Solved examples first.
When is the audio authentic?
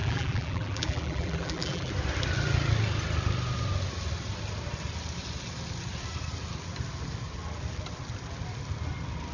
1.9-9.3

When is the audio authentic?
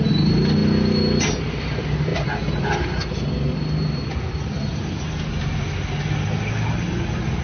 0.0-7.4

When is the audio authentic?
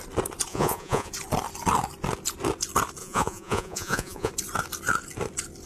0.0-0.5; 1.1-3.0; 4.3-5.7